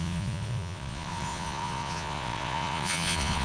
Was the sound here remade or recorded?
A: remade